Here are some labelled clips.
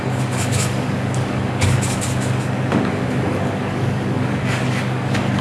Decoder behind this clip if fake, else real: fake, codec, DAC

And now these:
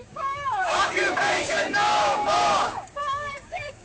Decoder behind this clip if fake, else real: fake, codec, DAC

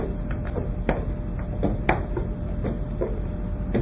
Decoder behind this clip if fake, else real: real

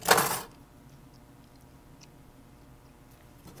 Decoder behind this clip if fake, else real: real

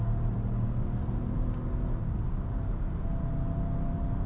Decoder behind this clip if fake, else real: real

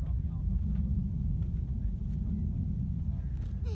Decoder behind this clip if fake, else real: real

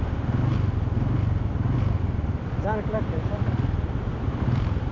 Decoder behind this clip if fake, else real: real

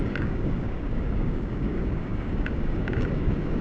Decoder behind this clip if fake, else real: fake, codec, DAC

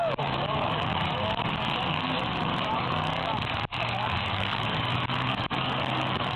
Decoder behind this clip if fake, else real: fake, codec, DAC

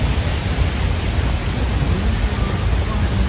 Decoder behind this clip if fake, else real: real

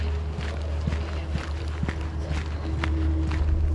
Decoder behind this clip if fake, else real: real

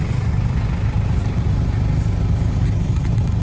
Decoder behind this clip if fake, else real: real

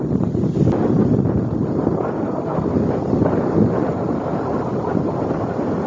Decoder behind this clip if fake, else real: real